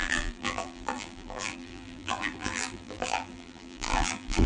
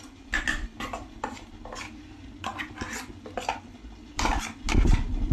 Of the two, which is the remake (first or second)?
first